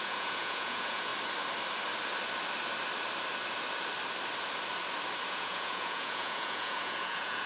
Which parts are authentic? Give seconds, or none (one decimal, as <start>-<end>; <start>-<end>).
1.1-5.3